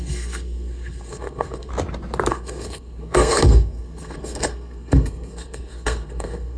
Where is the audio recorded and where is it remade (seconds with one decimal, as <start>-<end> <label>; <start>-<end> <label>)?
0.0-1.7 remade; 1.7-2.3 recorded; 2.3-6.6 remade